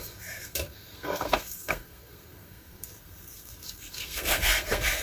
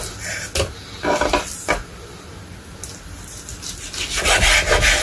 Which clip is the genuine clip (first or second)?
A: second